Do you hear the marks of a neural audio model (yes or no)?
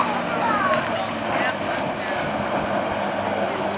no